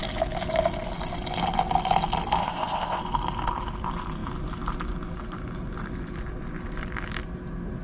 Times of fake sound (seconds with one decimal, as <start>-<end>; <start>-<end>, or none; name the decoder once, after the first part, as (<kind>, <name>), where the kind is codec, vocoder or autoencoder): 2.4-3.0 (codec, ZipCodec)